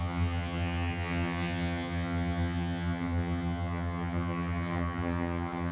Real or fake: fake